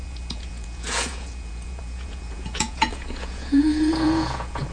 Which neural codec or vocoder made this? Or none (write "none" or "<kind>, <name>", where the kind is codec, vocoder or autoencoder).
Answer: vocoder, Vocos